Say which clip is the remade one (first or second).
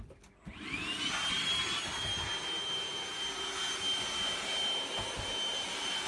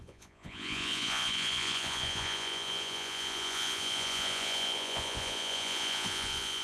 second